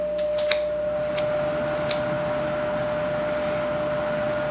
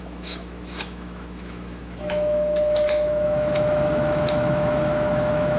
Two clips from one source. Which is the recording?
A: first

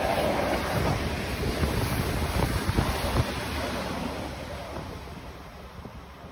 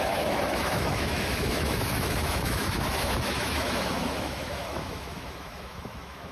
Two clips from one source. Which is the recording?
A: first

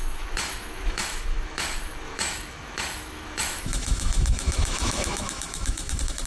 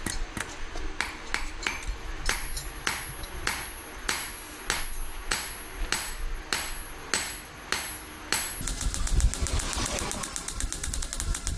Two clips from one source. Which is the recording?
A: second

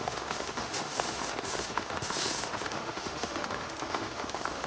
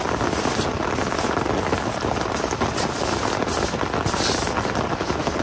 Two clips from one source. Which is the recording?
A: second